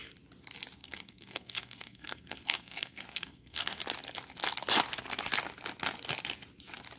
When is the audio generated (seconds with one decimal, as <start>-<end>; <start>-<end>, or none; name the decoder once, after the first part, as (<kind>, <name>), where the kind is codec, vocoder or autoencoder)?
0.8-3.8 (codec, SNAC)